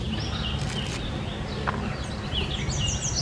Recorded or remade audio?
recorded